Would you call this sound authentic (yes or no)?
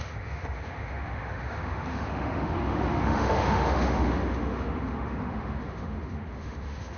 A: no